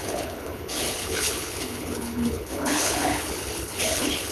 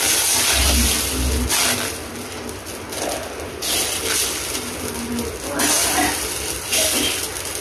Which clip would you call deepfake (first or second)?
first